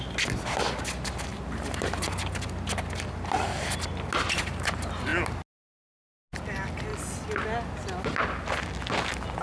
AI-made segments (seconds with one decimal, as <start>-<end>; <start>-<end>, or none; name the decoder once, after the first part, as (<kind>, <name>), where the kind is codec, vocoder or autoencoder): none